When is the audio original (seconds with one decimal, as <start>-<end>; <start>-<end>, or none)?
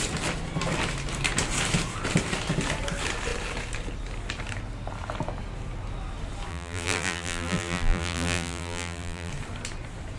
0.0-6.5; 9.3-10.2